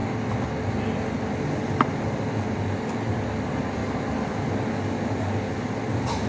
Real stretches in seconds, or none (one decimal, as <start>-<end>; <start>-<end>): 0.0-3.8; 4.4-6.3